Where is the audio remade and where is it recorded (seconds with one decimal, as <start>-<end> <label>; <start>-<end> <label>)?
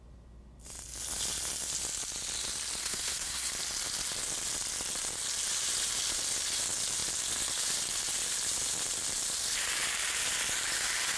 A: 0.0-2.8 recorded; 2.8-3.5 remade; 3.5-11.2 recorded